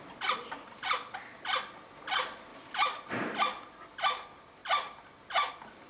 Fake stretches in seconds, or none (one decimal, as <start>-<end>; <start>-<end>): 2.5-3.1